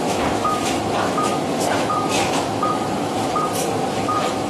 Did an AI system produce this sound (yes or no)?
yes